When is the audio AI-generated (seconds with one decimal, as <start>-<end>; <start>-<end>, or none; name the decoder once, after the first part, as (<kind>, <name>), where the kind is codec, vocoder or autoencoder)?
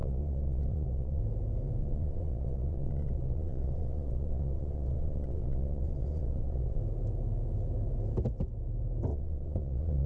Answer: 0.0-1.2 (vocoder, Vocos); 1.8-6.8; 9.1-10.1